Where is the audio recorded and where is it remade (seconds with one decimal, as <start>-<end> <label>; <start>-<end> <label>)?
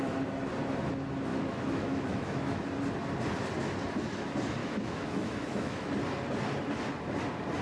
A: 0.0-1.3 recorded; 1.3-2.6 remade; 2.6-4.6 recorded; 4.6-5.9 remade; 5.9-7.6 recorded